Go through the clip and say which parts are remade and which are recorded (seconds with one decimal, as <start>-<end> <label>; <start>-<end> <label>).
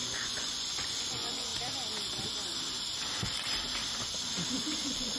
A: 0.0-1.5 remade; 1.5-4.5 recorded; 4.5-5.2 remade